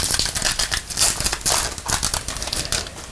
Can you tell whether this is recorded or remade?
recorded